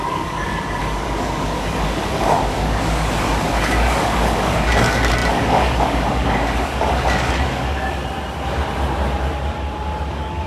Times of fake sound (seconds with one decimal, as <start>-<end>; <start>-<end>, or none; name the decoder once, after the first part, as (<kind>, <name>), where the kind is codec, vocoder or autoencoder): 0.0-8.0 (codec, DAC); 10.1-10.5